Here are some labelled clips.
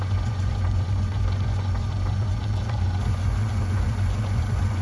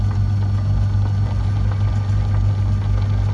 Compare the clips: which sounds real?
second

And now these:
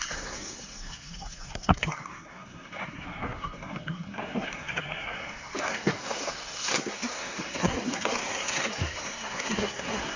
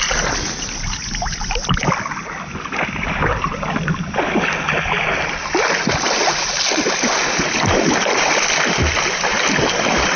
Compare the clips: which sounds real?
second